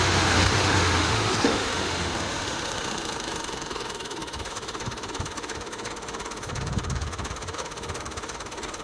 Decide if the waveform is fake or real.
fake